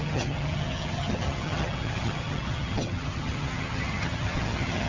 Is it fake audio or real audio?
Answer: fake